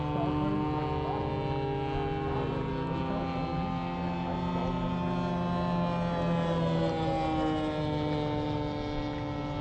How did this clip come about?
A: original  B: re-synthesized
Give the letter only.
A